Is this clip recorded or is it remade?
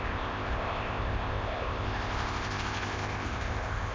remade